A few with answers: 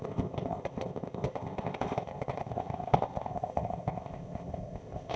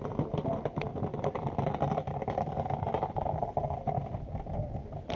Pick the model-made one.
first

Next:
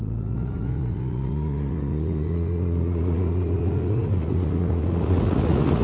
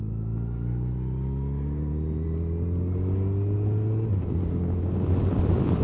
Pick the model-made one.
first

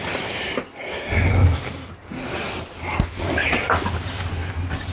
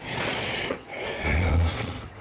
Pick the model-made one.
second